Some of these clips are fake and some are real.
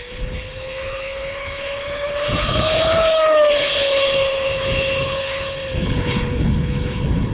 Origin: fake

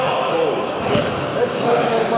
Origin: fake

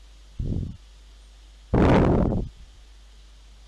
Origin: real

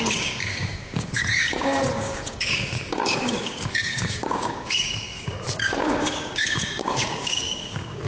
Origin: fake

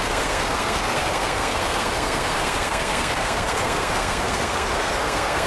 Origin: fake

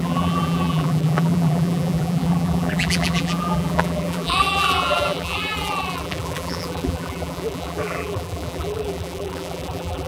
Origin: fake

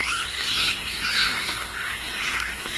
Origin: fake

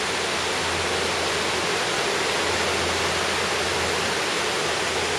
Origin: real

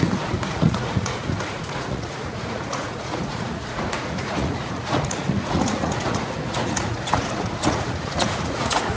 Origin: fake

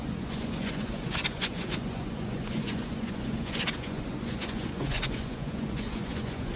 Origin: fake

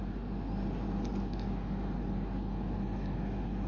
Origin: real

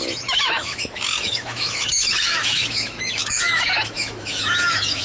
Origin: fake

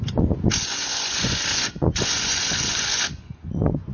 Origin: fake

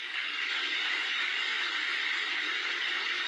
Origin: fake